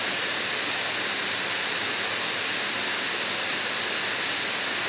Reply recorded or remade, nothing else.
recorded